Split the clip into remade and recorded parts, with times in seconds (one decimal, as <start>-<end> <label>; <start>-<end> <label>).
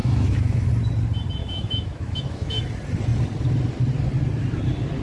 0.0-0.7 remade; 0.7-1.4 recorded; 1.4-2.6 remade; 2.6-5.0 recorded